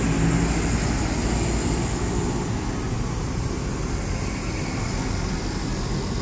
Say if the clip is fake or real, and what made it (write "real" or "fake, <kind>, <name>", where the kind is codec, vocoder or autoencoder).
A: real